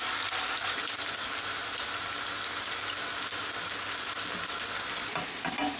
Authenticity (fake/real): real